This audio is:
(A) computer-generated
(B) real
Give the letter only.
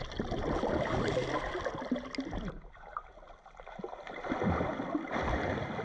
B